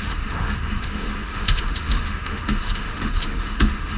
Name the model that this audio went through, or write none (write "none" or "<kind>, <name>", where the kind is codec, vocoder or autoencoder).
autoencoder, DAC-VAE